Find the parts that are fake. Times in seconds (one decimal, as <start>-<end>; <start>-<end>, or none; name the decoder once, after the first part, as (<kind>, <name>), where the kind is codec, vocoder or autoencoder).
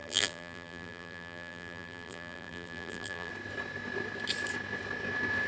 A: 0.0-3.3 (vocoder, BigVGAN v2)